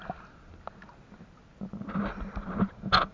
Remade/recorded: recorded